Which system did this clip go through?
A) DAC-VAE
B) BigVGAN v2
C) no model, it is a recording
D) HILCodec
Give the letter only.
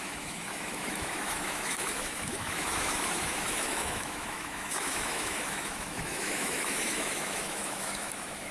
A